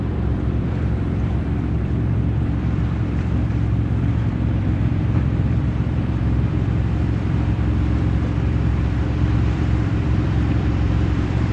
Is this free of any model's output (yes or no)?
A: no